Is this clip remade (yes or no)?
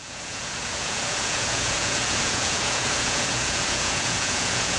yes